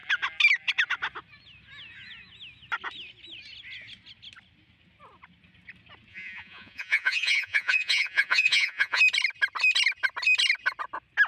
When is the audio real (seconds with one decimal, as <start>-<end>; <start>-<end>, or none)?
0.0-6.1; 9.0-11.3